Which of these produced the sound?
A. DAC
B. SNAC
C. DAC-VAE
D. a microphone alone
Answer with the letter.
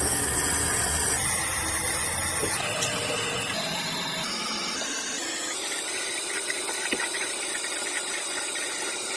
D